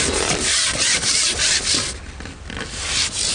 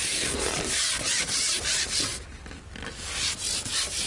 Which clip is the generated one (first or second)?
first